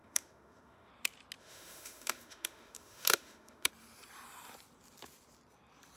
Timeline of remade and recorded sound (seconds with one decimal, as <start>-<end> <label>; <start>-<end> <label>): 0.0-0.9 remade; 0.9-1.4 recorded; 1.4-3.7 remade; 3.7-6.0 recorded